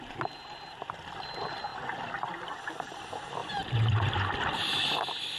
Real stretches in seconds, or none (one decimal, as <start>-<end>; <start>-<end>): 0.0-3.4; 3.9-5.4